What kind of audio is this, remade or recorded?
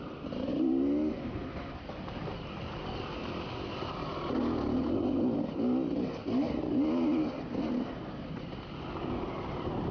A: recorded